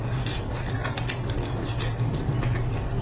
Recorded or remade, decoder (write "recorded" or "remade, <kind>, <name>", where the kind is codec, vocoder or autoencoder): recorded